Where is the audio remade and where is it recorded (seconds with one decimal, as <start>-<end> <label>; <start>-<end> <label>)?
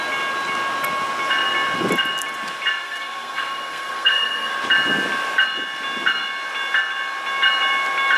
0.0-2.8 recorded; 2.8-4.5 remade; 4.5-8.2 recorded